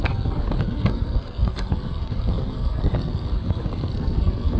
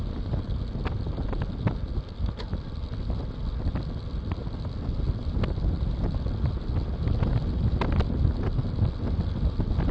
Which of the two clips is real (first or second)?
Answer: second